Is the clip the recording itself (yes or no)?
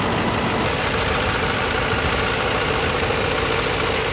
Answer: yes